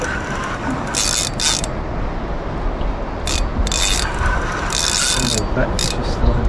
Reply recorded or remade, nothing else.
recorded